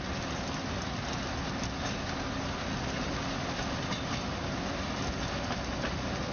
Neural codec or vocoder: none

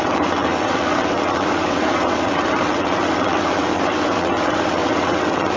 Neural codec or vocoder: vocoder, WaveNeXt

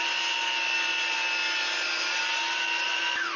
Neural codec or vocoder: none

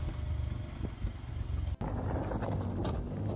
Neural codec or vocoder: none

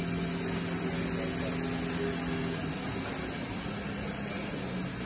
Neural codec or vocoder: none